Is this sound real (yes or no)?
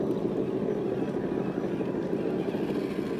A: yes